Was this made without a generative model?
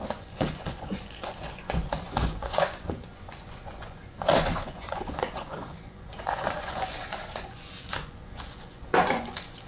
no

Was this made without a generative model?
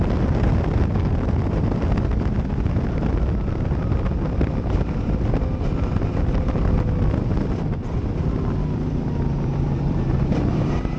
no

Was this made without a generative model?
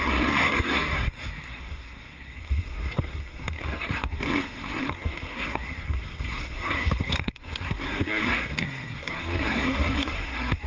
no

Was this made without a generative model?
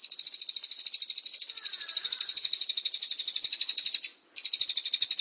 yes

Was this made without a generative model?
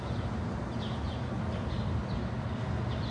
yes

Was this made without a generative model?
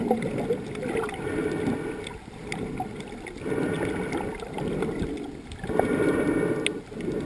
yes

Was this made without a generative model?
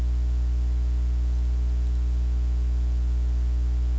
yes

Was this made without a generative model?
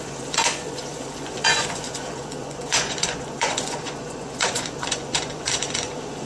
no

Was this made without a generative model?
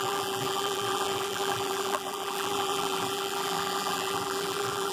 no